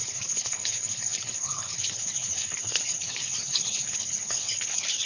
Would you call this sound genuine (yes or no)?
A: no